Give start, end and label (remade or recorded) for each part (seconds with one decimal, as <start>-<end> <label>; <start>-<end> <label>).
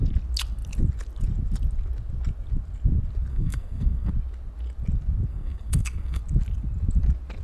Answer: 0.0-3.3 recorded; 3.3-4.1 remade; 4.1-5.3 recorded; 5.3-6.2 remade; 6.2-7.4 recorded